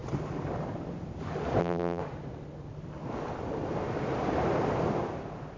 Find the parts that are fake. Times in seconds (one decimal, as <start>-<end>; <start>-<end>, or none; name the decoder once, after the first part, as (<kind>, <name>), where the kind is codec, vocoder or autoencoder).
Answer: 1.6-2.0 (vocoder, BigVGAN v2)